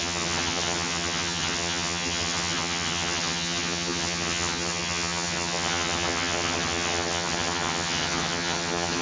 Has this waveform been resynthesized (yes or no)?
yes